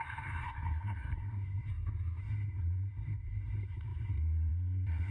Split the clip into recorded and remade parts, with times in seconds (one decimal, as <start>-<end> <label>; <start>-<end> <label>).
0.0-1.7 remade; 1.7-2.2 recorded; 2.2-5.1 remade